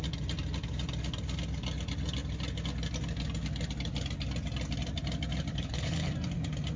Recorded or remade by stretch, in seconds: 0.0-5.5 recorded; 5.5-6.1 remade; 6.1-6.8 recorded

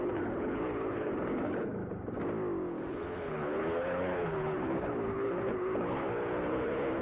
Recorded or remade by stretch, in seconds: 0.0-1.7 remade; 1.7-2.9 recorded; 2.9-7.0 remade

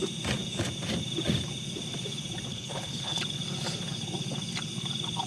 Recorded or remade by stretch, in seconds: 0.0-2.5 recorded; 2.5-3.2 remade; 3.2-5.3 recorded

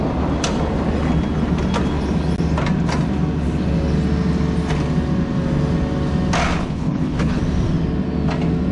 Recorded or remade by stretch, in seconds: 0.0-6.6 recorded; 6.6-7.4 remade; 7.4-8.7 recorded